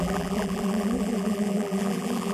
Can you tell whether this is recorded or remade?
remade